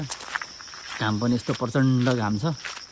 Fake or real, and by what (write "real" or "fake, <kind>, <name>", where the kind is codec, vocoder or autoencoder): real